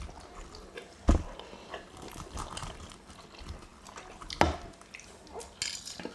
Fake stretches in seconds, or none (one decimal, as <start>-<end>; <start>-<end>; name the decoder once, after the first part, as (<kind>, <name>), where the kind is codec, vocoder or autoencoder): none